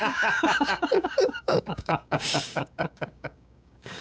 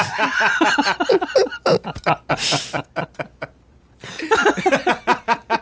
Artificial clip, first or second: first